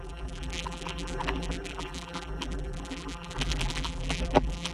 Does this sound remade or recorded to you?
remade